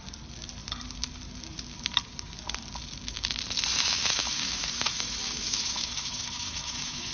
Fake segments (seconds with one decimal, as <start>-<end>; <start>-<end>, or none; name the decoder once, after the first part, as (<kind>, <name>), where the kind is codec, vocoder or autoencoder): 3.7-7.1 (autoencoder, DAC-VAE)